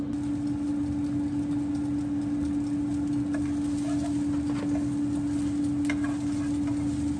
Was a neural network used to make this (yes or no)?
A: no